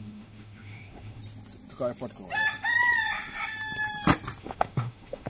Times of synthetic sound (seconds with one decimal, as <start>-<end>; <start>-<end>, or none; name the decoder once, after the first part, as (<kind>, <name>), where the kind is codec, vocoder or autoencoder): 0.0-1.2 (autoencoder, DAC-VAE); 4.4-5.3